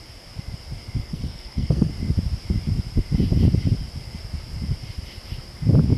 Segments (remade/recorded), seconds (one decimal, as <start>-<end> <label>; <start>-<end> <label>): 0.0-1.0 recorded; 1.0-1.9 remade; 1.9-6.0 recorded